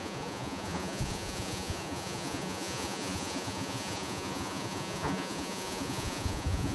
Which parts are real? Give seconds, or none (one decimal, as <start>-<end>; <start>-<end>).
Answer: none